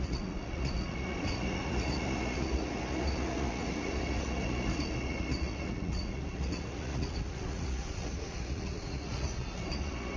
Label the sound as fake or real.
fake